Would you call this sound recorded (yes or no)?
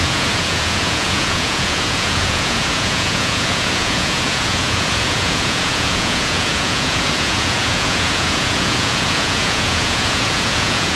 no